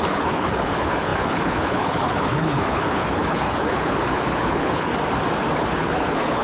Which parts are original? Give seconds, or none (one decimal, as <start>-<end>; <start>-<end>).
4.9-5.6